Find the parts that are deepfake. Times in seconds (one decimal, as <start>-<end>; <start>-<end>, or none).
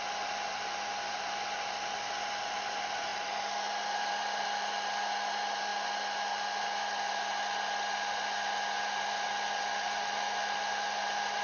0.0-5.7; 10.0-11.4